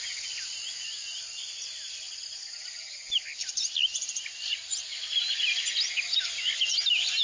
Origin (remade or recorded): recorded